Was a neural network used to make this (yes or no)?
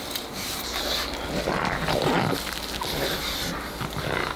no